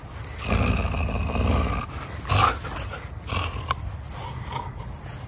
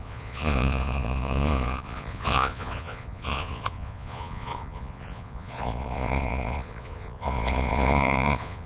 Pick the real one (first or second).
first